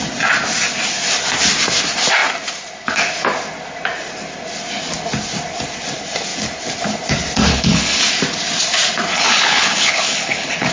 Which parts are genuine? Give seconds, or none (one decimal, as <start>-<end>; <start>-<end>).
0.0-7.5; 8.0-9.1